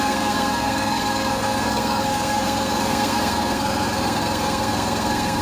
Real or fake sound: fake